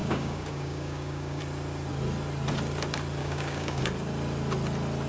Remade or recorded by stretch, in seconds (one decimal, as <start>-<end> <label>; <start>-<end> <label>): 0.0-1.4 remade; 1.4-3.2 recorded; 3.2-3.8 remade; 3.8-5.1 recorded